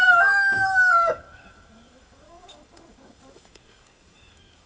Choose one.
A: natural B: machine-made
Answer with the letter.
B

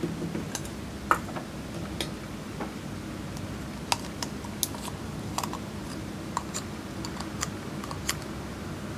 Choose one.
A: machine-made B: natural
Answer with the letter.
B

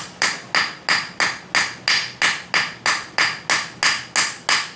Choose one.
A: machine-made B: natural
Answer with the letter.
B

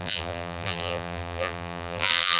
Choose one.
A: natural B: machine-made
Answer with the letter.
B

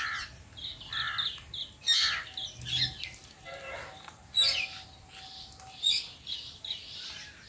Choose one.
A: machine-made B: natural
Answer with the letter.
B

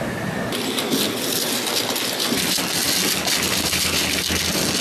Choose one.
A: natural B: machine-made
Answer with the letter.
A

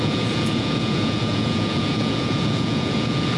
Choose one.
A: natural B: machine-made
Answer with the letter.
B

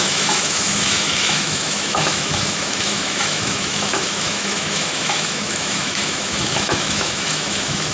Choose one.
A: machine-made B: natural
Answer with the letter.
A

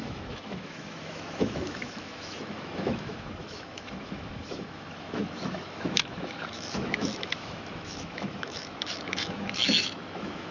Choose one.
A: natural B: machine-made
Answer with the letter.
B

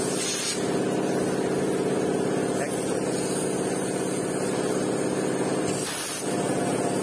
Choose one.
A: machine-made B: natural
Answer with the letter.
B